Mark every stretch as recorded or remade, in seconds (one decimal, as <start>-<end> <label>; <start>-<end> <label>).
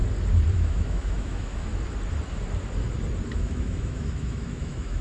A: 0.0-0.5 recorded; 0.5-1.7 remade; 1.7-3.3 recorded; 3.3-5.0 remade